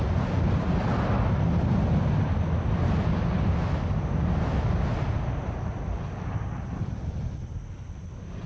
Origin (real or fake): real